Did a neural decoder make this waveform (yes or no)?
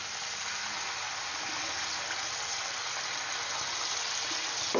no